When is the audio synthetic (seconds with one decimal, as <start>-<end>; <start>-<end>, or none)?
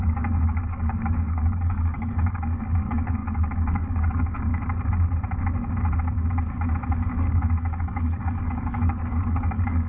0.0-4.5; 7.3-9.9